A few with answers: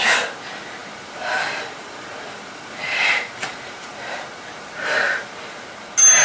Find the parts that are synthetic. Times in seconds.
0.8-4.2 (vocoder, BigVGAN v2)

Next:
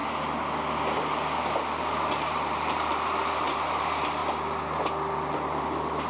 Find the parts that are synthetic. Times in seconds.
2.1-4.2 (vocoder, BigVGAN v2); 5.2-6.1

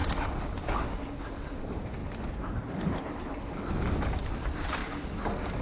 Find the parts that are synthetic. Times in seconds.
1.6-4.8 (vocoder, BigVGAN v2)

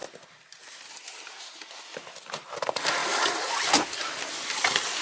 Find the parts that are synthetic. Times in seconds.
0.0-0.6 (vocoder, BigVGAN v2); 3.0-4.3

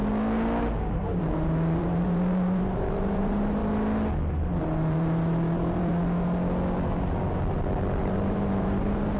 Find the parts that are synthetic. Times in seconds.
0.9-3.6 (vocoder, BigVGAN v2); 4.6-5.9; 8.0-9.2

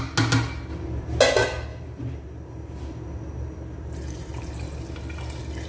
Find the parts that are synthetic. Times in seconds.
0.7-1.2 (vocoder, BigVGAN v2); 1.7-4.9

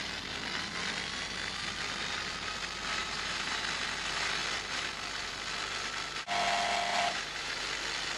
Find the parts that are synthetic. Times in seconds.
3.0-3.6 (vocoder, BigVGAN v2); 6.9-7.6